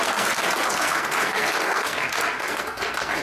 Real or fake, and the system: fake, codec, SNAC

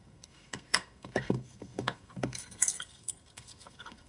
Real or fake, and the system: fake, codec, SNAC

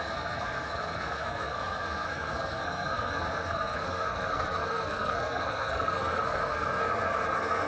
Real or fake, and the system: fake, codec, SNAC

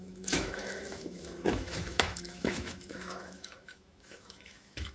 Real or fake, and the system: fake, autoencoder, DAC-VAE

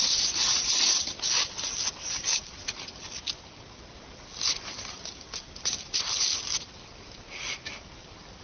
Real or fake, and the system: real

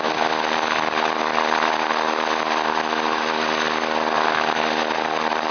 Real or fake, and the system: real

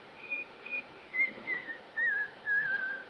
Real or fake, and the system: fake, autoencoder, DAC-VAE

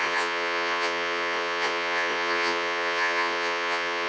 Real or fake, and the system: fake, vocoder, Vocos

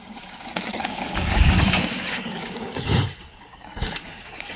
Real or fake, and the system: fake, codec, DAC